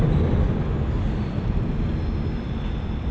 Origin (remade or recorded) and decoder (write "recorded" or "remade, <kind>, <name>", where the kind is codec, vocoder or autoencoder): recorded